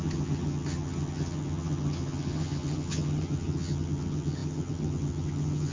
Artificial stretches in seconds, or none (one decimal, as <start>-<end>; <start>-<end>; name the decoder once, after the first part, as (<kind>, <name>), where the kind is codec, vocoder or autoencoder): 0.0-5.7 (vocoder, HiFi-GAN)